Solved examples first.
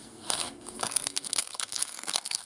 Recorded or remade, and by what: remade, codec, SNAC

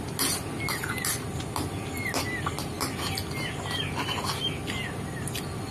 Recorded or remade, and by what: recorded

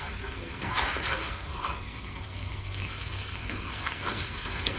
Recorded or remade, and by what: remade, codec, SNAC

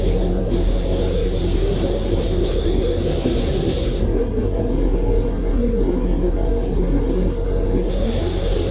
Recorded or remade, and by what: remade, codec, SNAC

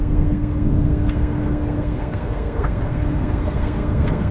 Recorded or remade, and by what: remade, codec, SNAC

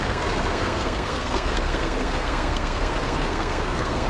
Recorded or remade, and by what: remade, codec, SNAC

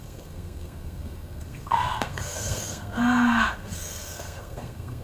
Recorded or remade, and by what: remade, codec, SNAC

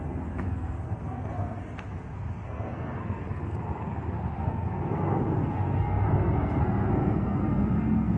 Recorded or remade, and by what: remade, codec, SNAC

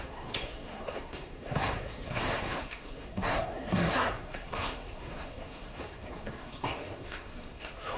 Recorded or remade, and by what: remade, codec, SNAC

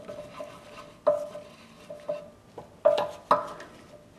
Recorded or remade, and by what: recorded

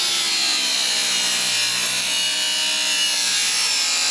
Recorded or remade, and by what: recorded